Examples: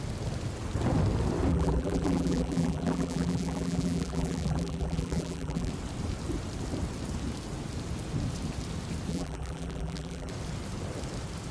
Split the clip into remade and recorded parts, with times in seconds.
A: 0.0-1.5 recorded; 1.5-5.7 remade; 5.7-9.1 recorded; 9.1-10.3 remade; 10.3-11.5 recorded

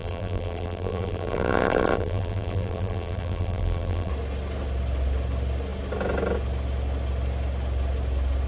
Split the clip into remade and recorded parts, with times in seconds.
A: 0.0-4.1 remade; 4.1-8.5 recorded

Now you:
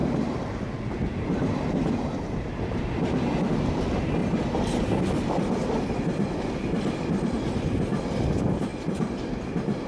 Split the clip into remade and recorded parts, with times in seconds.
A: 0.0-4.2 recorded; 4.2-6.4 remade; 6.4-9.9 recorded

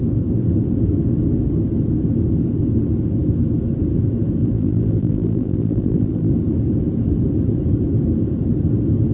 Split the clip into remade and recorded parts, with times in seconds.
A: 0.0-4.4 recorded; 4.4-6.3 remade; 6.3-9.1 recorded